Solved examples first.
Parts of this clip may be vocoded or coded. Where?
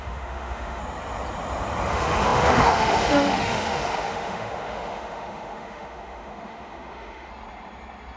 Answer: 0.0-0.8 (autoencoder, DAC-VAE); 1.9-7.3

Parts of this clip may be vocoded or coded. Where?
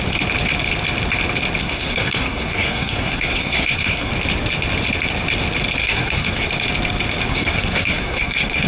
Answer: 1.6-4.1 (codec, SNAC); 5.8-6.5; 7.3-8.7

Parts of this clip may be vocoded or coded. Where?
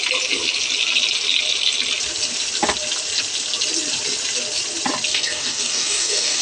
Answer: 5.1-6.4 (codec, DAC)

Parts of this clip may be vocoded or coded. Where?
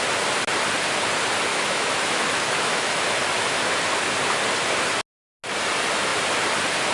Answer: 1.5-3.0 (autoencoder, DAC-VAE)